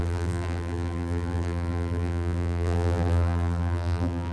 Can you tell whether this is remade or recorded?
remade